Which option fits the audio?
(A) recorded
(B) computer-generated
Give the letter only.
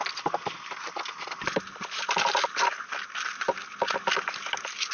A